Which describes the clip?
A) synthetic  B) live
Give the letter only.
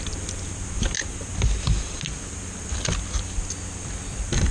B